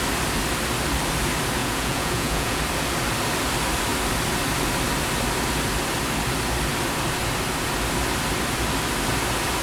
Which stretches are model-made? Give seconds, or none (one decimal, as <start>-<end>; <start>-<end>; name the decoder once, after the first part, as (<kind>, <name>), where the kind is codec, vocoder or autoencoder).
1.6-2.6 (vocoder, Vocos)